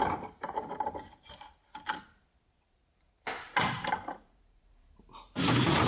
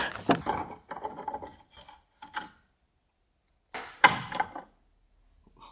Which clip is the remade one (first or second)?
first